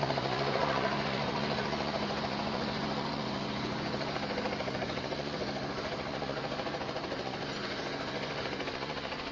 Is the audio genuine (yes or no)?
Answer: no